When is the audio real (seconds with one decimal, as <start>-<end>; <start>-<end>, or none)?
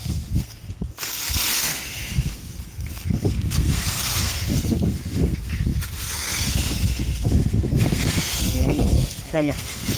none